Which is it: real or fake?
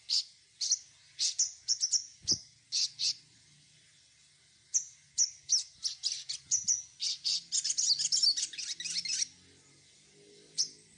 real